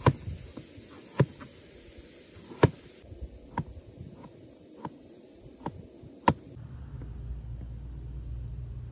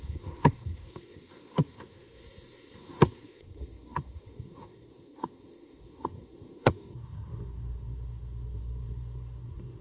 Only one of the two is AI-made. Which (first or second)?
second